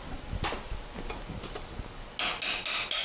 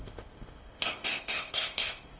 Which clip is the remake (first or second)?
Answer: second